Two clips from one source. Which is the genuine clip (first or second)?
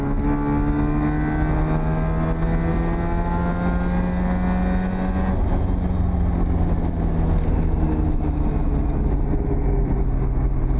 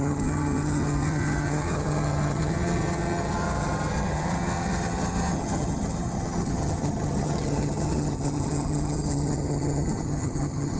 first